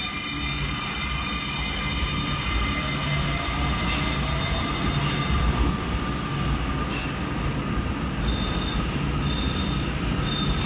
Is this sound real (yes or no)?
yes